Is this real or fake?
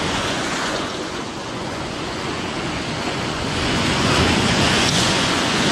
fake